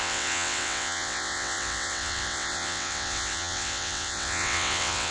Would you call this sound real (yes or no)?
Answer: no